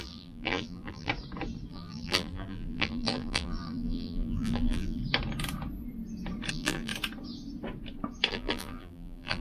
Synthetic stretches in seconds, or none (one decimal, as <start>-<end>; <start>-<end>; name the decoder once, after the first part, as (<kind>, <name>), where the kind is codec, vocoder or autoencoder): 0.0-1.1 (vocoder, BigVGAN v2); 1.7-5.0; 6.5-6.9; 8.3-9.4